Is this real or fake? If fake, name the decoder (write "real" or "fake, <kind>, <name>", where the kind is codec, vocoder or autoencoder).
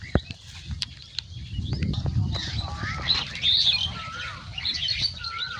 fake, vocoder, BigVGAN v2